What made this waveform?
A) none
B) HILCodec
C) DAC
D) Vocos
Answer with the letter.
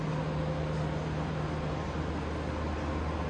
A